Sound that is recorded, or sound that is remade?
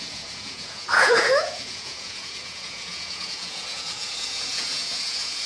remade